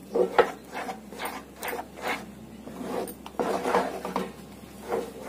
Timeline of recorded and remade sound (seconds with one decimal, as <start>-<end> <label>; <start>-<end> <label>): 0.0-5.3 recorded